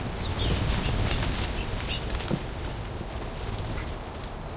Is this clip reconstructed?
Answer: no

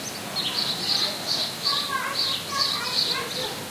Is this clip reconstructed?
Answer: no